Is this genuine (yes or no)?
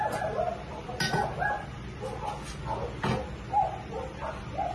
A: yes